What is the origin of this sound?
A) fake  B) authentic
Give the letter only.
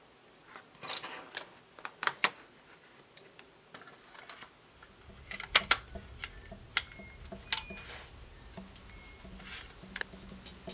B